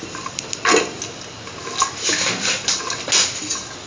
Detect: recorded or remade recorded